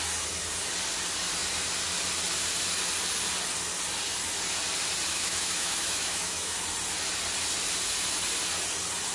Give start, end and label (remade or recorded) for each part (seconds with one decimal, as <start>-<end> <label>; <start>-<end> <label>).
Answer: 0.0-5.1 recorded; 5.1-6.6 remade; 6.6-9.1 recorded